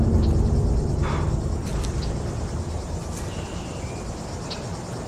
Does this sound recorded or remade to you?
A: recorded